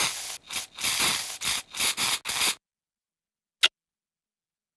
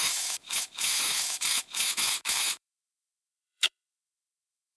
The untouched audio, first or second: first